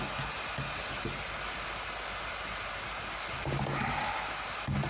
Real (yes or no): yes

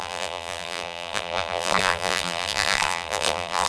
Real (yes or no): no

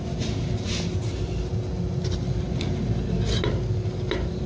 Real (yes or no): yes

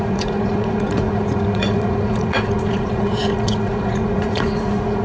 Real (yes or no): no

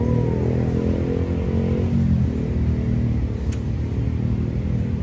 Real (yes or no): yes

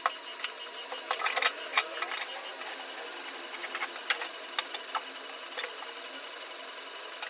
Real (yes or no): yes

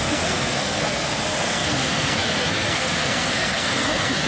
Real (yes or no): no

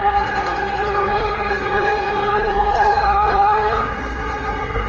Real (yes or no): no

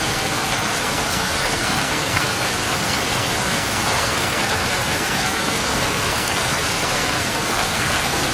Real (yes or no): no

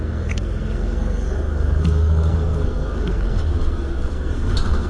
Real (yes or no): no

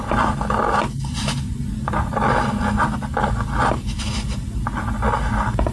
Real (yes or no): yes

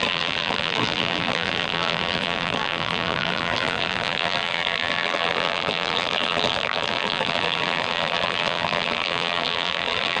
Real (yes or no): no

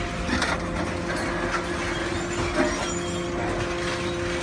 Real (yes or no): yes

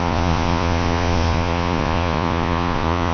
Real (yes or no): no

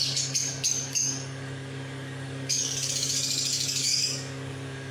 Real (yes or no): no